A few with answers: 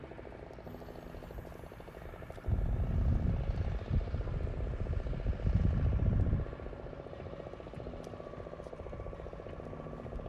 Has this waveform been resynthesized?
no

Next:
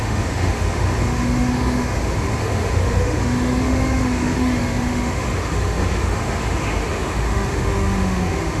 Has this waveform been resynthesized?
yes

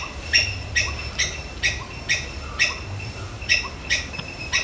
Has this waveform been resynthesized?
no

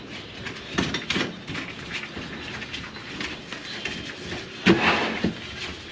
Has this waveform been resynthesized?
no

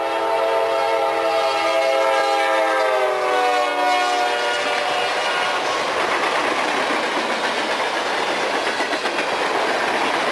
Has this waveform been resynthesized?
no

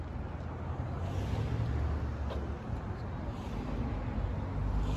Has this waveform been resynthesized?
no